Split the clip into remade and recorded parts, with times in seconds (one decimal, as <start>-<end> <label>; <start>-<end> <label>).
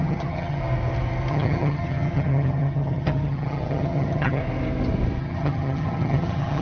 0.0-0.6 remade; 0.6-1.3 recorded; 1.3-4.4 remade; 4.4-5.2 recorded; 5.2-6.6 remade